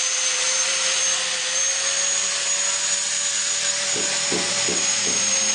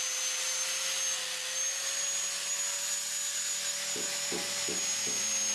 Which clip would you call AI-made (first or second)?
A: first